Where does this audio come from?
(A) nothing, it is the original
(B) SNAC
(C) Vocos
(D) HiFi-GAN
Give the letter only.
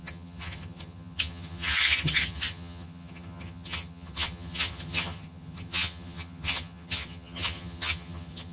D